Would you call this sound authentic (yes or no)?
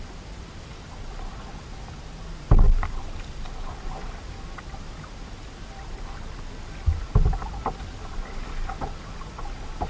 yes